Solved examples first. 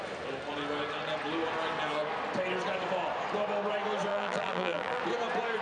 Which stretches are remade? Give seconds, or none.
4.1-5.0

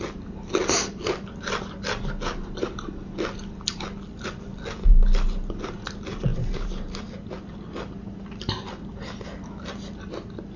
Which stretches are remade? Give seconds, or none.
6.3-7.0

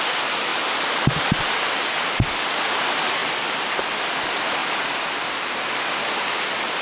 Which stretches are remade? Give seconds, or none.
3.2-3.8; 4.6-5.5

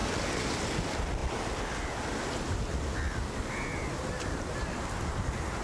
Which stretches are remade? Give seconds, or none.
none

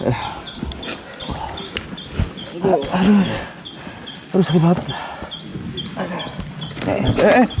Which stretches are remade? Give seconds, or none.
none